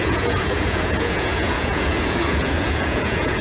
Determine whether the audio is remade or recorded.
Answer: remade